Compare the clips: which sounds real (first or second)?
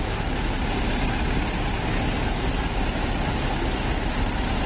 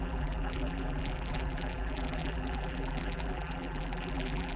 first